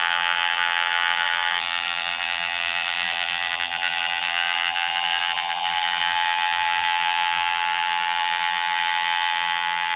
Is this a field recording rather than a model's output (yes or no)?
no